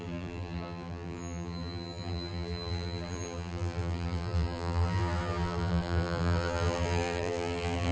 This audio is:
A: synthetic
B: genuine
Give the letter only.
A